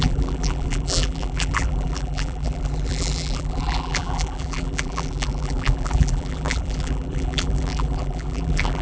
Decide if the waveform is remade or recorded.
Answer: remade